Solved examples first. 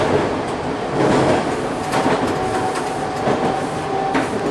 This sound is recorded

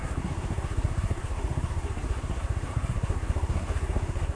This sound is remade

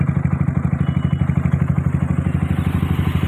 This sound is recorded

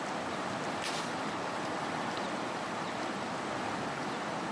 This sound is remade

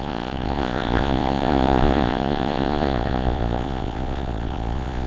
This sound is remade